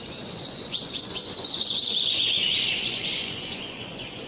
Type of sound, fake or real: fake